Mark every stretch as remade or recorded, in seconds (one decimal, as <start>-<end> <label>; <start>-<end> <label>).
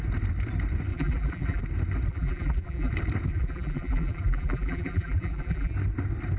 0.0-0.9 recorded; 0.9-1.6 remade; 1.6-2.1 recorded; 2.1-2.9 remade; 2.9-3.3 recorded; 3.3-5.7 remade; 5.7-6.4 recorded